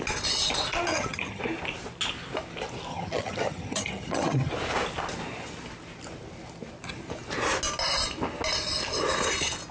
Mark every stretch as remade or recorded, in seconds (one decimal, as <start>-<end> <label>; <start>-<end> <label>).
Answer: 0.0-0.9 recorded; 0.9-1.4 remade; 1.4-2.9 recorded; 2.9-4.5 remade; 4.5-9.7 recorded